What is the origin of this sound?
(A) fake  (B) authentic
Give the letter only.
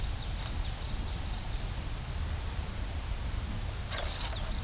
B